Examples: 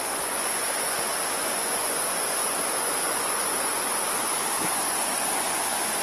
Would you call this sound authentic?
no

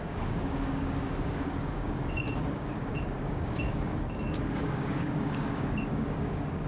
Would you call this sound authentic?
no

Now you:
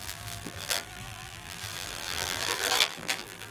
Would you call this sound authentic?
no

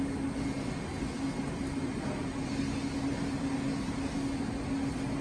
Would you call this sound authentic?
yes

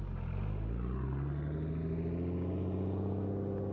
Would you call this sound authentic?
yes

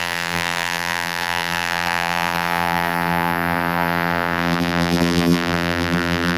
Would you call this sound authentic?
no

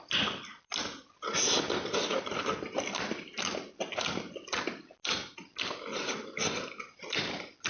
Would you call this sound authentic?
yes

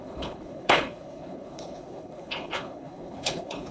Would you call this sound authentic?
no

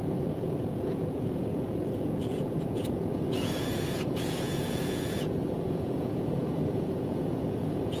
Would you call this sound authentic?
no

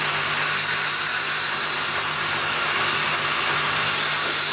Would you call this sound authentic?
yes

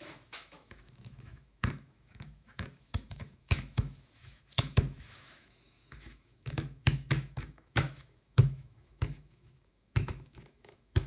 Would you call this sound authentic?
no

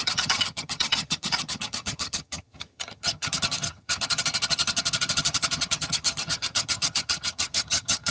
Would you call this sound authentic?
no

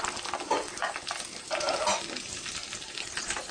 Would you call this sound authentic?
no